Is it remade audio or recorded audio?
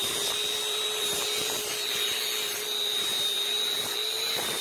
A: remade